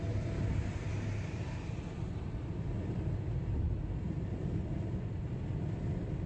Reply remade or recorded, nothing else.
recorded